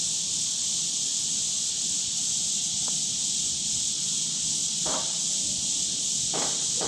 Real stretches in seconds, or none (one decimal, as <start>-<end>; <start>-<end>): 0.0-6.9